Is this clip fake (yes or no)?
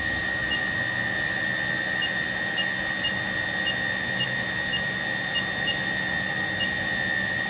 no